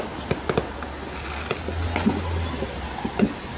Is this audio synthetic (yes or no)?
no